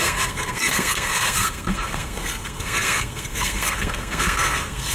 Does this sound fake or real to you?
fake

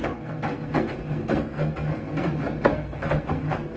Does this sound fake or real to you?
fake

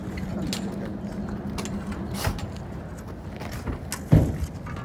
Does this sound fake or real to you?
real